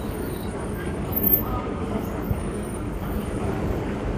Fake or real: fake